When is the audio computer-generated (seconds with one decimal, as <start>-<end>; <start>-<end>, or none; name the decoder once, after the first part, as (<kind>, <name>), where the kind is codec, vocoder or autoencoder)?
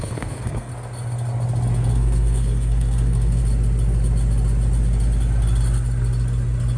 0.0-0.7 (codec, SNAC); 1.9-3.4